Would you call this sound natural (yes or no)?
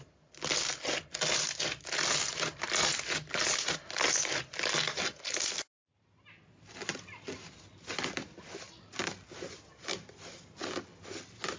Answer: yes